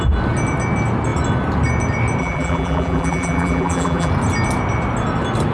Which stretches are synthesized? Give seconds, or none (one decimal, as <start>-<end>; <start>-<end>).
2.2-4.1